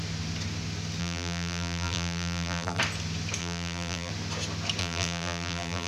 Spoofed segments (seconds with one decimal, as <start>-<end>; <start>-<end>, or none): 1.0-2.8; 3.4-4.1; 4.8-5.9